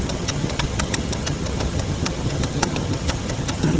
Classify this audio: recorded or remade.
remade